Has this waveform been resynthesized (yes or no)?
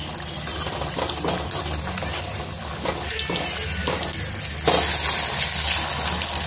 no